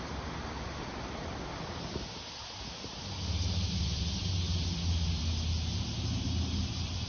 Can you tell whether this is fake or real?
real